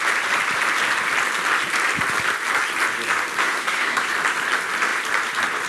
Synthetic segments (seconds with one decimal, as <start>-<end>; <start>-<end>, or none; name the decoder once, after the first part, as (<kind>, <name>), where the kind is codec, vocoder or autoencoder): 3.4-4.1 (codec, SNAC)